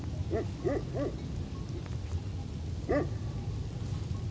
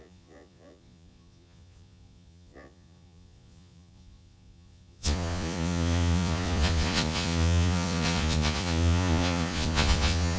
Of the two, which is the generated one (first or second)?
second